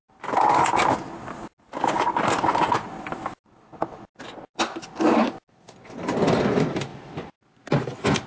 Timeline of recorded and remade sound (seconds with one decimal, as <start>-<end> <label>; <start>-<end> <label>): 0.0-8.3 recorded